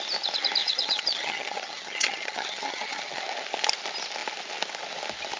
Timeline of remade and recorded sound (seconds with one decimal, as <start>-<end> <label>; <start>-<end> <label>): 0.0-0.6 recorded; 0.6-3.2 remade; 3.2-5.4 recorded